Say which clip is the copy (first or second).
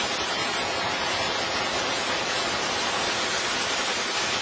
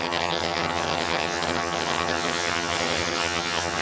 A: second